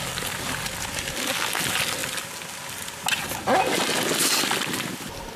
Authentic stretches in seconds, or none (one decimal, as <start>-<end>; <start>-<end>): 0.0-5.4

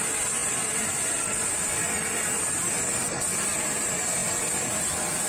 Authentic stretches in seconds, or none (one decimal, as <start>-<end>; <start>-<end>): 0.0-5.3

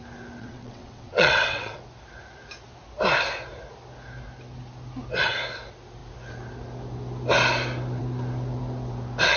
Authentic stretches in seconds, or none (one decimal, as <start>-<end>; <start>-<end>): 0.0-0.4; 1.8-9.4

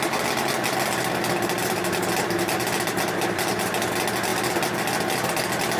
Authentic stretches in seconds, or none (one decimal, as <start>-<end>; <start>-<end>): 0.0-5.8